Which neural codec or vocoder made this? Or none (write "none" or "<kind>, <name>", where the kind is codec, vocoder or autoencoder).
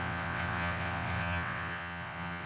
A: vocoder, WaveNeXt